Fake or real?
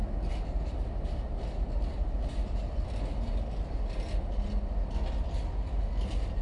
real